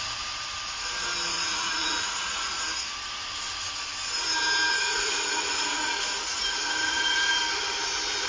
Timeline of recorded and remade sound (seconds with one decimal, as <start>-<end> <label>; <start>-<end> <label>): 0.0-1.3 recorded; 1.3-2.5 remade; 2.5-4.7 recorded; 4.7-7.4 remade; 7.4-8.3 recorded